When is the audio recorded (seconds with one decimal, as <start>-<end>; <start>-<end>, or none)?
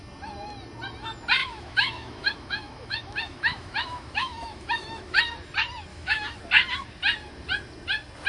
0.0-1.4; 5.2-5.9; 6.4-8.3